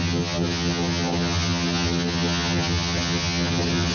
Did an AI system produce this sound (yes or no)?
yes